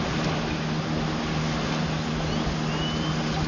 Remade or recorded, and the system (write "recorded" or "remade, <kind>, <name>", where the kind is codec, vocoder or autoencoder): recorded